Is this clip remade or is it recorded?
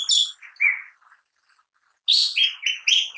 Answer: recorded